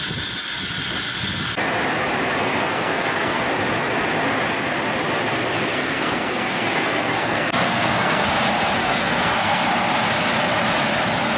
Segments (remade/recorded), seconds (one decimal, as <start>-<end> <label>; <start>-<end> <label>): 0.0-2.4 recorded; 2.4-3.4 remade; 3.4-5.7 recorded; 5.7-8.3 remade; 8.3-8.8 recorded; 8.8-9.6 remade; 9.6-11.4 recorded